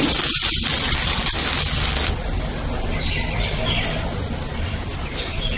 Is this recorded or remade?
recorded